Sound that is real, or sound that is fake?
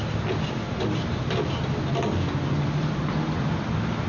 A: real